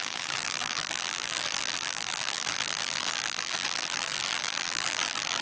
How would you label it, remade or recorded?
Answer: remade